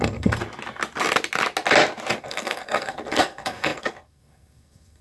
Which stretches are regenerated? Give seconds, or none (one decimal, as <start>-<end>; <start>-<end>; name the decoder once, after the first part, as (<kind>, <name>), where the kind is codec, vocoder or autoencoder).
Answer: 0.0-0.4 (codec, SNAC); 2.2-5.0